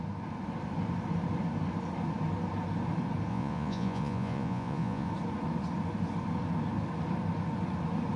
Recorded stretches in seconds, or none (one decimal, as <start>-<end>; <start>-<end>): 0.0-3.3; 5.1-8.2